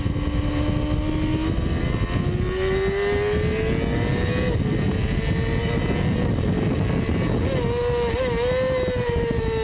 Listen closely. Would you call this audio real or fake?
real